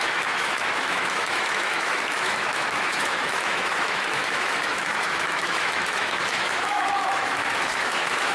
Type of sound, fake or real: fake